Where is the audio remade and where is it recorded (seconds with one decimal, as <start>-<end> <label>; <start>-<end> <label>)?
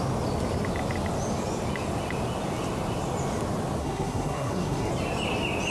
0.0-3.8 recorded; 3.8-4.9 remade; 4.9-5.7 recorded